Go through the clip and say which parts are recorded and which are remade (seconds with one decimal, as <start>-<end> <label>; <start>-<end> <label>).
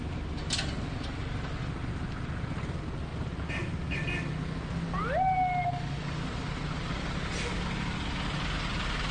0.0-9.1 recorded